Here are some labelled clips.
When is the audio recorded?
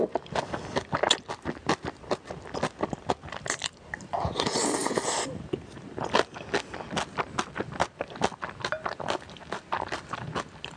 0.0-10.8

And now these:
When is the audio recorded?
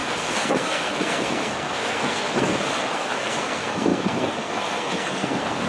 none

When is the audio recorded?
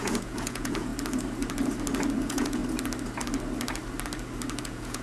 0.9-2.2; 2.6-4.6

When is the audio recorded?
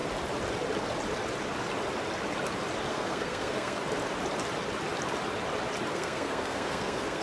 0.0-2.9; 3.8-5.9